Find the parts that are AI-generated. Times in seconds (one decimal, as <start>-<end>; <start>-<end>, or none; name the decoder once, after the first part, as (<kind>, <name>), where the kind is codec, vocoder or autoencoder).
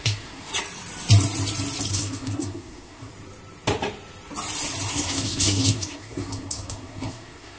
0.0-0.5 (codec, SNAC); 1.9-3.1; 4.9-7.6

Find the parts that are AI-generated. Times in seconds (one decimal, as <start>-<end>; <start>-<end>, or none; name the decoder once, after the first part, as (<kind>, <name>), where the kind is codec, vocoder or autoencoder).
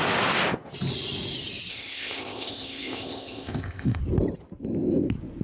1.7-4.0 (codec, ZipCodec)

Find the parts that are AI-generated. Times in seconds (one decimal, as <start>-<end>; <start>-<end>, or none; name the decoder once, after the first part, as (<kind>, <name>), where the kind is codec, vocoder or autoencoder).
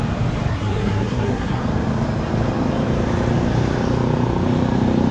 0.5-1.6 (codec, SNAC)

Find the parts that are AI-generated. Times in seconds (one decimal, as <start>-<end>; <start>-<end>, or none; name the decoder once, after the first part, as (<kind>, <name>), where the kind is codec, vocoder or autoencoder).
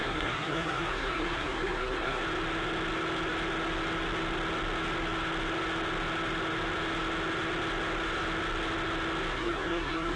0.0-2.2 (codec, SNAC); 9.3-10.2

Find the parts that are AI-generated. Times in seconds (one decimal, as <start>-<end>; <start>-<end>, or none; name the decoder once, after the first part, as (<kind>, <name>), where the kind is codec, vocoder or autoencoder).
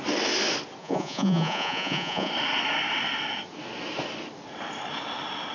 0.8-2.3 (vocoder, Vocos)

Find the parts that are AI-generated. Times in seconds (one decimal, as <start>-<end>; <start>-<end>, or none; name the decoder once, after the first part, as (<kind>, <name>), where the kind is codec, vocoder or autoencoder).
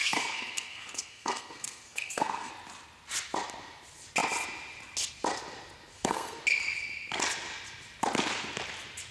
0.0-2.5 (codec, SNAC); 5.9-6.4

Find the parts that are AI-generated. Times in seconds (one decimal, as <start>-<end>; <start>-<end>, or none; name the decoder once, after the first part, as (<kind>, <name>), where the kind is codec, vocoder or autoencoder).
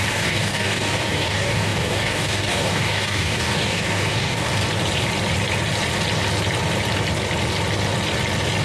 0.0-4.6 (codec, DAC)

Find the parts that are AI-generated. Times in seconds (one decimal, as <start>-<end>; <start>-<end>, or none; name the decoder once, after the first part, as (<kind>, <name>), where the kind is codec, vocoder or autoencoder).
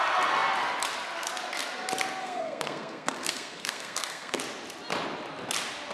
2.2-4.4 (codec, SNAC)